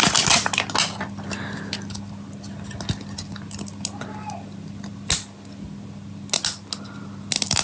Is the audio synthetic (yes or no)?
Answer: no